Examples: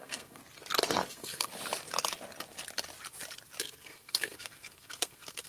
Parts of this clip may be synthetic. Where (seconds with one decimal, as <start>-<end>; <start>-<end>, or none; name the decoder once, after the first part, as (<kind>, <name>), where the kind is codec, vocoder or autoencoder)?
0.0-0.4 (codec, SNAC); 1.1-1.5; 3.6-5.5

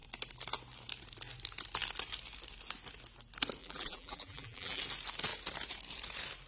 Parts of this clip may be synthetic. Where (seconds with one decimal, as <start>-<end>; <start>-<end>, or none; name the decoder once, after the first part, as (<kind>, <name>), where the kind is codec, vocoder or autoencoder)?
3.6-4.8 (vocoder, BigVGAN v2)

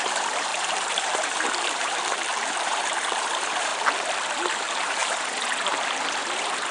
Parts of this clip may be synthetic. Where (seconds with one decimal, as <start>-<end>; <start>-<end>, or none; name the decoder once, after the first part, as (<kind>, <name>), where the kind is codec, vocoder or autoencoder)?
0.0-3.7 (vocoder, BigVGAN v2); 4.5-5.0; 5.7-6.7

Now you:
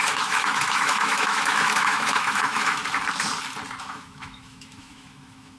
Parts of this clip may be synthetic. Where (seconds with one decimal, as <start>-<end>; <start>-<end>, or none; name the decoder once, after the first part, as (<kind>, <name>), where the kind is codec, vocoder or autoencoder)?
0.0-2.8 (autoencoder, DAC-VAE); 3.8-5.6

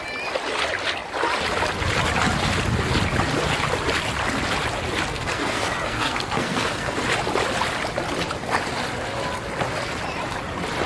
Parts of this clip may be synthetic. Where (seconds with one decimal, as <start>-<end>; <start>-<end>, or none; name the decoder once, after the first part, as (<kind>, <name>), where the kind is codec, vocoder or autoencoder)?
5.1-7.0 (codec, SNAC)

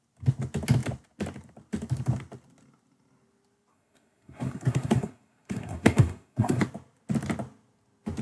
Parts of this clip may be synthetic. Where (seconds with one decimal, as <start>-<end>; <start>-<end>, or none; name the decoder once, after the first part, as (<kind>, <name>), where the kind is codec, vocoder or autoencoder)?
3.7-6.6 (codec, SNAC)

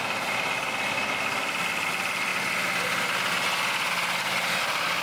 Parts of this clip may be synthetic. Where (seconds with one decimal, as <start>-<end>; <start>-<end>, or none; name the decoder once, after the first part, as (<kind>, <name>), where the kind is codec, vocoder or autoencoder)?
none

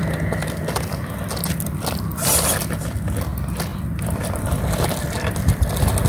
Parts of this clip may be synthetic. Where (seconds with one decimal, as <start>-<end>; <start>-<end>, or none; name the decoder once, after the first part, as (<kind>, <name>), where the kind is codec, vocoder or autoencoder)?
3.7-6.1 (vocoder, BigVGAN v2)